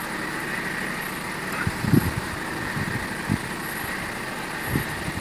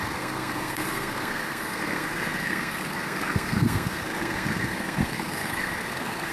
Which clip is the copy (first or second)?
second